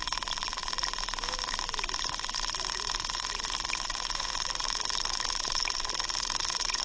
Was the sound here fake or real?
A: real